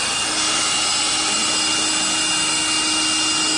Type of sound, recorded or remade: recorded